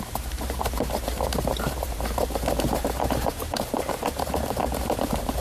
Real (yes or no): no